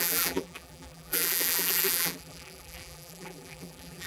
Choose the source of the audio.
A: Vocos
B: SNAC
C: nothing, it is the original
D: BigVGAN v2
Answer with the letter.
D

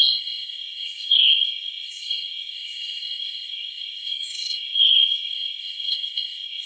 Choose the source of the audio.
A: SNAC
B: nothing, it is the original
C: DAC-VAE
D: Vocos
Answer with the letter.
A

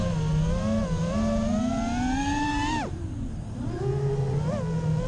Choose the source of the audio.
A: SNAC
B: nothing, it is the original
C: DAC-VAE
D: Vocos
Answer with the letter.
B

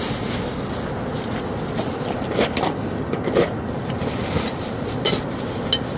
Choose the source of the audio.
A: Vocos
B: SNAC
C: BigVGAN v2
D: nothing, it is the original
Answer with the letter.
D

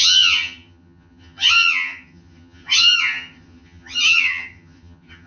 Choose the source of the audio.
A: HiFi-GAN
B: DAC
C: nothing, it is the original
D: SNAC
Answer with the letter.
A